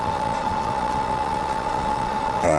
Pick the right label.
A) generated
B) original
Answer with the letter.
A